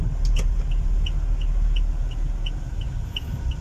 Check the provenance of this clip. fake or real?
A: real